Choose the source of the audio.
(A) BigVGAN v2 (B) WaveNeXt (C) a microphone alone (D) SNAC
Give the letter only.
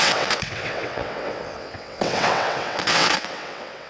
B